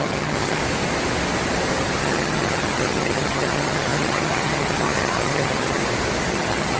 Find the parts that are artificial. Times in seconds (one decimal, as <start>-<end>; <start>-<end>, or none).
0.0-0.6; 2.0-5.8; 6.3-6.8